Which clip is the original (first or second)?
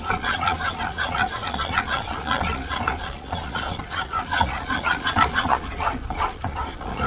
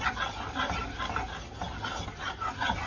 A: second